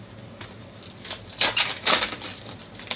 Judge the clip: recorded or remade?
recorded